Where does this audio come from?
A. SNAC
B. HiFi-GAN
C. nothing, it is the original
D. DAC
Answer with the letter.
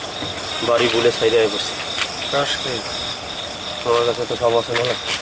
C